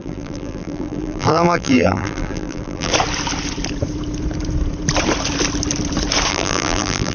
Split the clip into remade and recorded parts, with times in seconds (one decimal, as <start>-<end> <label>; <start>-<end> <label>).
0.0-2.9 remade; 2.9-6.3 recorded; 6.3-7.1 remade